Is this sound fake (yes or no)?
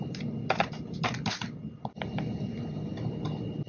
no